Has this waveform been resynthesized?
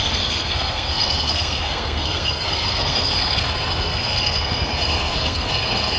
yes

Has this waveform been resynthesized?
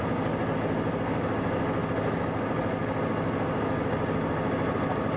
no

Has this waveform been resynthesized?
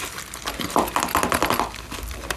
no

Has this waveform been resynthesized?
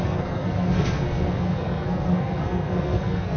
yes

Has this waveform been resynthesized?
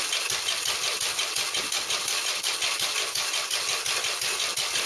no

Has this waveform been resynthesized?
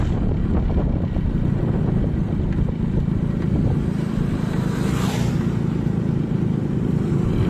no